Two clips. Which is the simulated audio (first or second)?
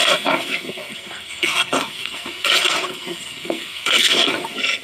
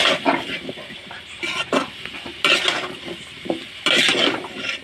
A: first